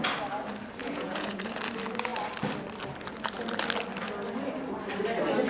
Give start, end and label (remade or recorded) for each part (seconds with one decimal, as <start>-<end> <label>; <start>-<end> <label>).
0.0-0.8 recorded; 0.8-1.4 remade; 1.4-5.5 recorded